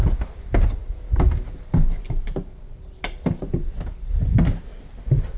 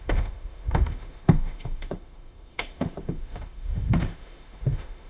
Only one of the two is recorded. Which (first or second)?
first